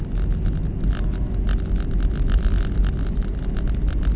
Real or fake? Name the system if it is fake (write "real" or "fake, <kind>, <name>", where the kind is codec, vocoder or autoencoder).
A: real